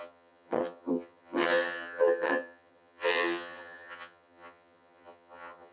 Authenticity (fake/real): fake